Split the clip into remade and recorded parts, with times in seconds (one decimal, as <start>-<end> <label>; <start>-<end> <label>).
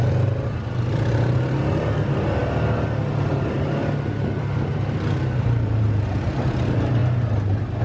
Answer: 0.0-2.4 remade; 2.4-3.3 recorded; 3.3-7.0 remade; 7.0-7.8 recorded